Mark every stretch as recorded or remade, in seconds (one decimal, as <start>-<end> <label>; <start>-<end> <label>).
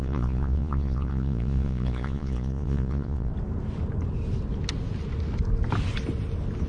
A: 0.0-3.3 remade; 3.3-6.7 recorded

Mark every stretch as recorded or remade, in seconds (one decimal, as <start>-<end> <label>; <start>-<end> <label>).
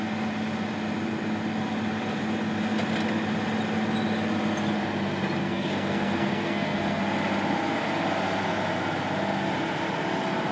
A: 0.0-5.4 recorded; 5.4-7.0 remade; 7.0-10.5 recorded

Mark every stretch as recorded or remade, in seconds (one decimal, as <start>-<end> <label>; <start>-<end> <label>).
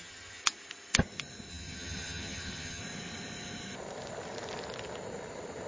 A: 0.0-0.4 remade; 0.4-1.5 recorded; 1.5-2.8 remade; 2.8-5.7 recorded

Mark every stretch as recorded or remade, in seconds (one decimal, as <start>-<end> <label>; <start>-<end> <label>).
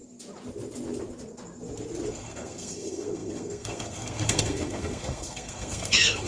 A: 0.0-2.1 recorded; 2.1-6.3 remade